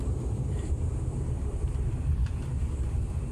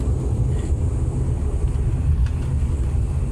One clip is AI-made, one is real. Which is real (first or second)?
second